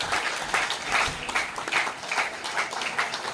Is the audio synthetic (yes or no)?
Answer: no